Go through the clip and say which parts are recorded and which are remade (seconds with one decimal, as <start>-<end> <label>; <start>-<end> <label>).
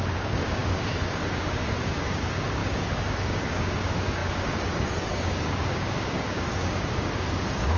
0.0-7.8 remade